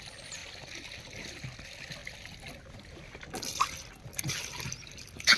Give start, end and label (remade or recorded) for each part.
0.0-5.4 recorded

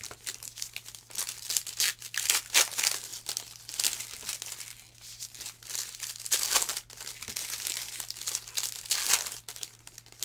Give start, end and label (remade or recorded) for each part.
0.0-10.2 recorded